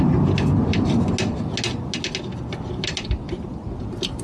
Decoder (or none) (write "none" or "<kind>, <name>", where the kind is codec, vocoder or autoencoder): none